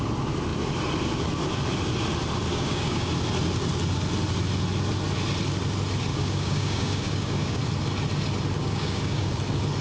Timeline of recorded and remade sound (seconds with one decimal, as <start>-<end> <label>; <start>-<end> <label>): 0.0-2.5 recorded; 2.5-3.1 remade; 3.1-6.1 recorded; 6.1-7.6 remade; 7.6-8.6 recorded; 8.6-9.3 remade; 9.3-9.8 recorded

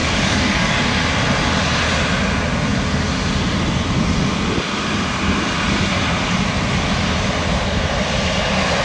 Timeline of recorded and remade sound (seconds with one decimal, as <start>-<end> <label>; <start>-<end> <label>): 0.0-0.8 remade; 0.8-8.8 recorded

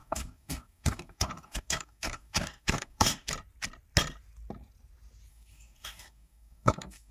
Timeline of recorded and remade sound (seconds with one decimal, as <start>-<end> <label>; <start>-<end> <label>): 0.0-3.3 remade; 3.3-5.3 recorded; 5.3-7.1 remade

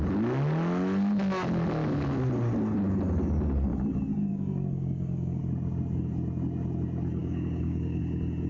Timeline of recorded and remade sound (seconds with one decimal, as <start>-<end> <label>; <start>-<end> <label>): 0.0-4.3 recorded; 4.3-5.4 remade; 5.4-7.2 recorded; 7.2-8.0 remade; 8.0-8.5 recorded

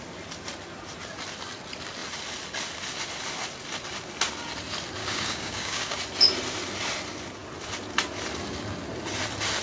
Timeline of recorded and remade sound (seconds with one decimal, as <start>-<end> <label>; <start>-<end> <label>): 0.0-5.0 recorded; 5.0-6.0 remade; 6.0-9.6 recorded

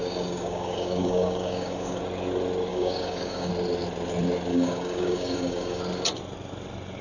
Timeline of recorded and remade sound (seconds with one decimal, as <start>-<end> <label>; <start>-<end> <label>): 0.0-2.0 remade; 2.0-2.7 recorded; 2.7-3.5 remade; 3.5-4.5 recorded; 4.5-5.8 remade; 5.8-7.0 recorded

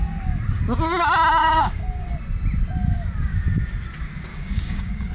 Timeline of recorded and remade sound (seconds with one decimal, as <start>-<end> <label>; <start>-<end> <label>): 0.0-1.4 recorded; 1.4-2.0 remade; 2.0-4.3 recorded; 4.3-5.1 remade